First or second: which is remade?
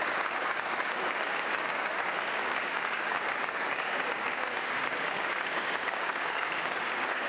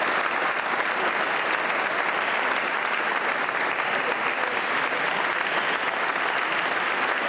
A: first